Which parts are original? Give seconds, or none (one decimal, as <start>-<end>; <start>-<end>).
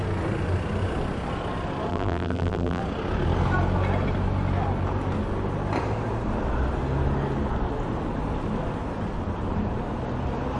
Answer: 0.0-1.9; 2.8-10.6